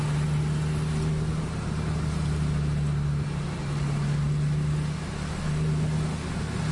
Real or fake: real